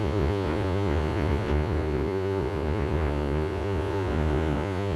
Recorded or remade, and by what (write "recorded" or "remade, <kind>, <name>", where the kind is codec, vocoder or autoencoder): remade, vocoder, Vocos